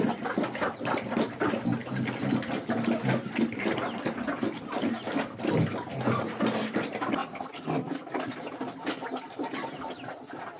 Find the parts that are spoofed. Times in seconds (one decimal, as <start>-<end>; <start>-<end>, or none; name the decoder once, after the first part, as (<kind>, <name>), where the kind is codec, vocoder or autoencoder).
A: none